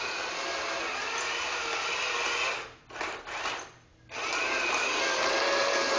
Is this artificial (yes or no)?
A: no